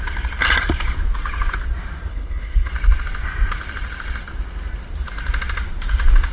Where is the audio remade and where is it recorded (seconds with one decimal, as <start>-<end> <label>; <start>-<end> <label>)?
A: 0.0-2.1 recorded; 2.1-2.7 remade; 2.7-6.3 recorded